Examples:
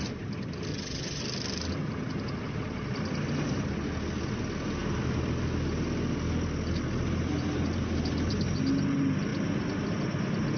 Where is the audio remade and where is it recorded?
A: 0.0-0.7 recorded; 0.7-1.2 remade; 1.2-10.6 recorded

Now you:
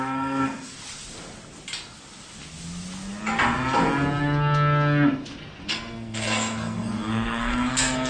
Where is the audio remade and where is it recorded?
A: 0.0-0.8 remade; 0.8-5.7 recorded; 5.7-8.1 remade

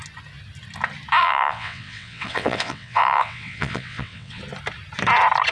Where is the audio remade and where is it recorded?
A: 0.0-1.2 recorded; 1.2-4.4 remade; 4.4-5.5 recorded

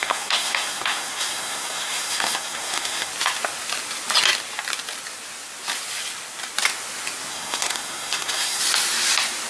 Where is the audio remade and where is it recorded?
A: 0.0-3.1 remade; 3.1-7.3 recorded; 7.3-8.6 remade; 8.6-9.5 recorded